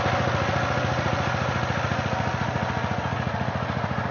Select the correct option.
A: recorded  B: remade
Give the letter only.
A